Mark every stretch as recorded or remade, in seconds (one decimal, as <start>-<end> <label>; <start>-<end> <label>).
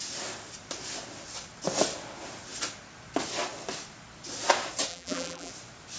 0.0-4.9 recorded; 4.9-5.5 remade; 5.5-6.0 recorded